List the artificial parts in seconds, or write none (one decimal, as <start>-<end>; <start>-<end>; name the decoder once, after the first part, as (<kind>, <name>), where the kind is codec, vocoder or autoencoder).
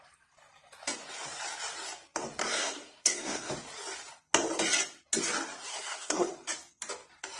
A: 2.4-3.5 (codec, SNAC); 5.7-6.3